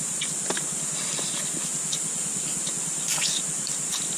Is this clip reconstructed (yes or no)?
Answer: no